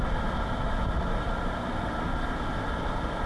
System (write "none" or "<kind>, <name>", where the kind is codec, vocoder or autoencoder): none